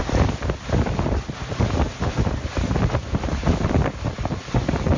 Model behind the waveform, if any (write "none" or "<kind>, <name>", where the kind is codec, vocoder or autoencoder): none